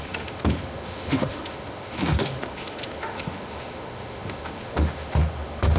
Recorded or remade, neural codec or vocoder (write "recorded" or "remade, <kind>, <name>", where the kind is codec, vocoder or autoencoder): remade, autoencoder, DAC-VAE